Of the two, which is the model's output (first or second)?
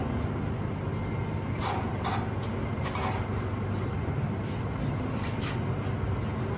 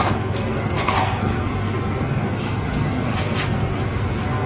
second